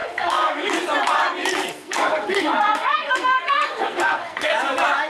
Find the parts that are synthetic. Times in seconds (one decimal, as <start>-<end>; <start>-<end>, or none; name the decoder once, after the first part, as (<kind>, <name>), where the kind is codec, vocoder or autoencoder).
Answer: 0.0-0.7 (codec, SNAC); 1.5-4.5